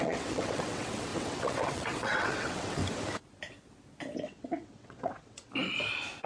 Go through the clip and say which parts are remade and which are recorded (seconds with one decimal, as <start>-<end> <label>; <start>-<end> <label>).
0.0-2.8 remade; 2.8-4.2 recorded; 4.2-5.5 remade; 5.5-6.3 recorded